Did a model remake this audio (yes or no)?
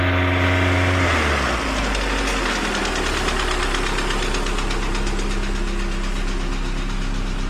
no